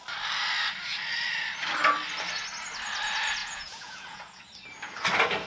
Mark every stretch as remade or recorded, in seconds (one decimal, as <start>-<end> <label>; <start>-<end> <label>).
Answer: 0.0-3.4 recorded; 3.4-4.4 remade; 4.4-5.5 recorded